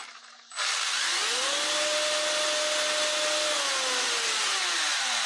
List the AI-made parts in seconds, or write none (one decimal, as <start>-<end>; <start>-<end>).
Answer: none